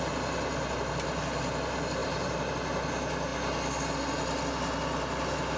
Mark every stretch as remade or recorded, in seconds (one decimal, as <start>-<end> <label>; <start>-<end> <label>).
0.0-2.0 recorded; 2.0-2.5 remade; 2.5-5.6 recorded